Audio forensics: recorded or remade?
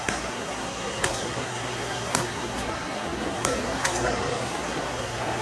remade